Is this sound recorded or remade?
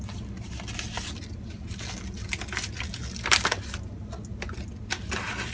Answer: recorded